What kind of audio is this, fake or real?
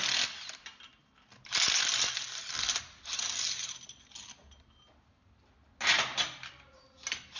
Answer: real